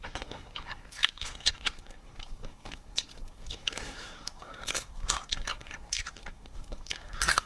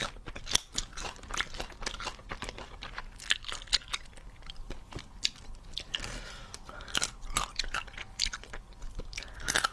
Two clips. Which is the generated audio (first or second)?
first